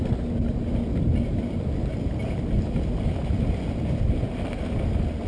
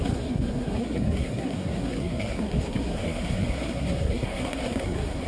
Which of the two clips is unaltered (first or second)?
first